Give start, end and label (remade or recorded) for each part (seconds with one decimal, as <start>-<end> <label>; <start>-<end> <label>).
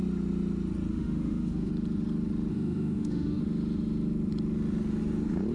0.0-0.9 recorded; 0.9-1.7 remade; 1.7-2.5 recorded; 2.5-3.4 remade; 3.4-5.5 recorded